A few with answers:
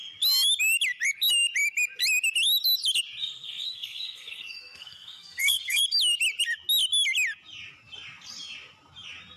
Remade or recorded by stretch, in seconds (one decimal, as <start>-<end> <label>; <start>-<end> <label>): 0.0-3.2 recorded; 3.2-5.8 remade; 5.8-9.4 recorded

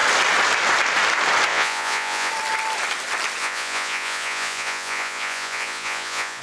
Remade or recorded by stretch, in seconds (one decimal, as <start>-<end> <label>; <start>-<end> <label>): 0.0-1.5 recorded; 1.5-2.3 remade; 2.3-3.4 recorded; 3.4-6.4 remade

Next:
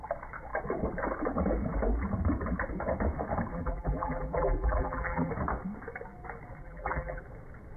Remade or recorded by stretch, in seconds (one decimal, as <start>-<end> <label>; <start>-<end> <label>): 0.0-3.5 recorded; 3.5-5.3 remade; 5.3-6.6 recorded; 6.6-7.2 remade; 7.2-7.8 recorded

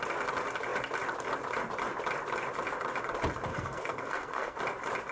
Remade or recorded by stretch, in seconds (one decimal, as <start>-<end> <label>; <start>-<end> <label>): 0.0-3.5 recorded; 3.5-4.6 remade; 4.6-5.1 recorded

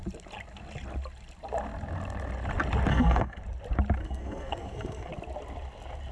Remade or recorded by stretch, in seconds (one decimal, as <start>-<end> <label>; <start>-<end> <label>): 0.0-2.9 recorded; 2.9-3.4 remade; 3.4-4.0 recorded; 4.0-5.1 remade; 5.1-6.1 recorded

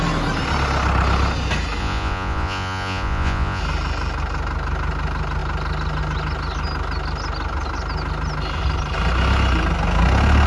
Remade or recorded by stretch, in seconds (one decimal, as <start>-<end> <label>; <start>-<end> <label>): 0.0-1.8 recorded; 1.8-3.6 remade; 3.6-10.5 recorded

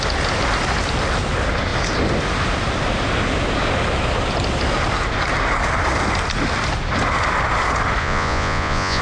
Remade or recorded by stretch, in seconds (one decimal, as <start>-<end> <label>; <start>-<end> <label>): 0.0-8.0 recorded; 8.0-9.0 remade